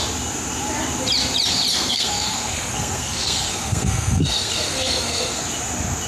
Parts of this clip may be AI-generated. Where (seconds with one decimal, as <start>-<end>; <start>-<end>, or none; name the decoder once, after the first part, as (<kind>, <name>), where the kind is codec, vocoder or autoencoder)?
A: 1.7-5.4 (codec, SNAC)